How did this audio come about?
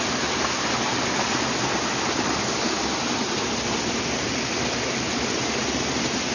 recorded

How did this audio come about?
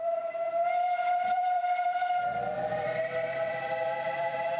remade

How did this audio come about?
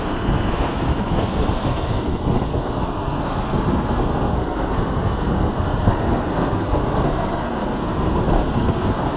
remade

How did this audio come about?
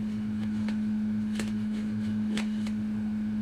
remade